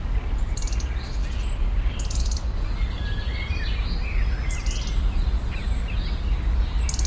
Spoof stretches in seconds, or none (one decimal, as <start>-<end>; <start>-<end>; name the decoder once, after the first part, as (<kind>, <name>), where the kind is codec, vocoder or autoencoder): none